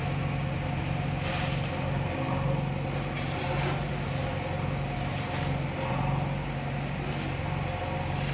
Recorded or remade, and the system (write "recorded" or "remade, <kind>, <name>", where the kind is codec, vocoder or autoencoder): recorded